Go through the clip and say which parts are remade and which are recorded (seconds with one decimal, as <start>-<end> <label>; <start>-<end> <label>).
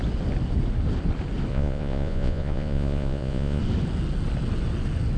0.0-1.5 recorded; 1.5-3.6 remade; 3.6-5.2 recorded